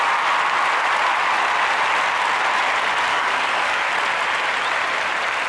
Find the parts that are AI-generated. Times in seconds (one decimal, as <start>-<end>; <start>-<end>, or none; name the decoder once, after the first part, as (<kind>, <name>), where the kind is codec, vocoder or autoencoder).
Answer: 3.1-3.9 (codec, DAC)